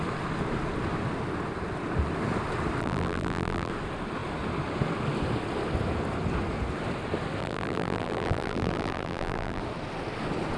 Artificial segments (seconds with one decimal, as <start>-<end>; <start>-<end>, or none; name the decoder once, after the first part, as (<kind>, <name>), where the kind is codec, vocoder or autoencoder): 2.8-3.7 (vocoder, BigVGAN v2); 7.4-9.6